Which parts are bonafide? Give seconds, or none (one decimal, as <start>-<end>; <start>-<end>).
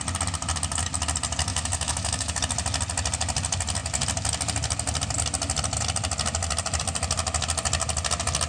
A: 0.0-1.5; 2.4-8.5